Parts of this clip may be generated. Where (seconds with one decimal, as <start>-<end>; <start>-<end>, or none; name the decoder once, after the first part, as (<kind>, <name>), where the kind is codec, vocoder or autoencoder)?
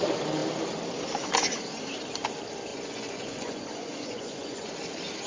2.7-4.7 (vocoder, Vocos)